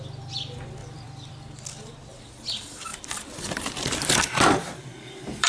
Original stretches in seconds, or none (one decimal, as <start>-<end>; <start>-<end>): 0.0-0.8; 1.3-2.9